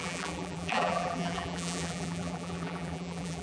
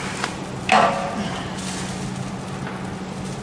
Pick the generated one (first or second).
first